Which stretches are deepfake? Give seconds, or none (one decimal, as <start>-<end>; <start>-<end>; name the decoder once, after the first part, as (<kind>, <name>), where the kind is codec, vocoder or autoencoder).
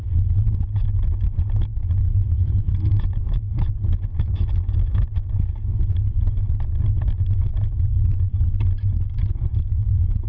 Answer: 0.0-6.4 (vocoder, Vocos); 7.4-8.3; 9.2-10.3